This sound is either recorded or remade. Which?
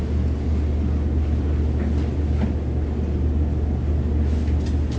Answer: recorded